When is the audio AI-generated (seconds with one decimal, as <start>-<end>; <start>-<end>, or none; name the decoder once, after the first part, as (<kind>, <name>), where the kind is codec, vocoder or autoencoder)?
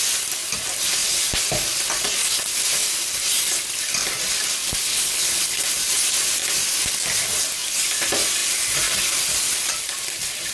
4.9-5.6 (codec, HILCodec)